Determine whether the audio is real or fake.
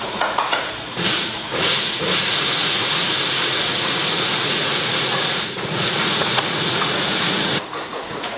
fake